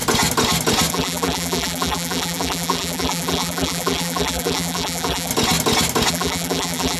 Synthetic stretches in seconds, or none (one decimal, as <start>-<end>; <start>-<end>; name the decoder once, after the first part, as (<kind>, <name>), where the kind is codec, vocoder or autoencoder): 0.9-5.3 (vocoder, BigVGAN v2); 6.1-7.0